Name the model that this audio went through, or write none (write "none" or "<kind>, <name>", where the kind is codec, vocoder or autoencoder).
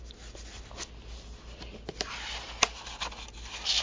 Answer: none